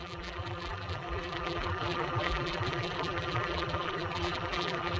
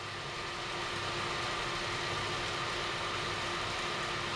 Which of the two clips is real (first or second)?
second